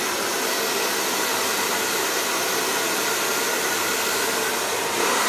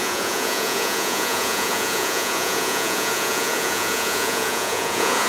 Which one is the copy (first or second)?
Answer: second